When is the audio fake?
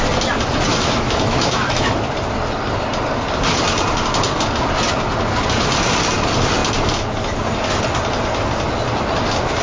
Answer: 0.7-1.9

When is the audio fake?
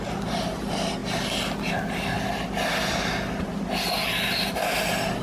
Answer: none